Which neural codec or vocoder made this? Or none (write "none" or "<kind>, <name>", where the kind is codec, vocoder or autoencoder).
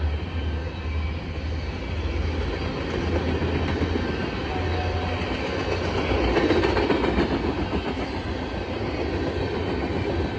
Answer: none